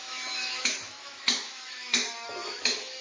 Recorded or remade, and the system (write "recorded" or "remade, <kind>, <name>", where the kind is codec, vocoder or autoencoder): remade, autoencoder, DAC-VAE